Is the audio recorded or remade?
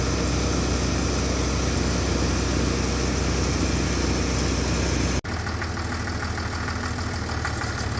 recorded